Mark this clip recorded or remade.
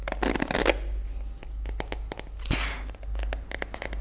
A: recorded